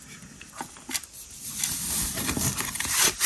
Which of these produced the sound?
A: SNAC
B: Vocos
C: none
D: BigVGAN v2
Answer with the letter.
C